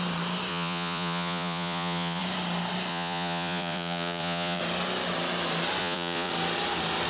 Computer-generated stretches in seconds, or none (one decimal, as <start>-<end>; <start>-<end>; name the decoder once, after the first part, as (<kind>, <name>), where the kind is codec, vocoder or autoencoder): 0.5-2.2 (vocoder, Vocos); 2.9-4.6; 5.8-6.3